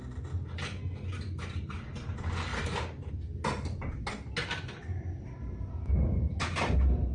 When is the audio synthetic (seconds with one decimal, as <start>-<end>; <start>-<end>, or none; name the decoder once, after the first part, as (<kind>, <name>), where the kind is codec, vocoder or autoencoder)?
2.5-3.1 (vocoder, BigVGAN v2)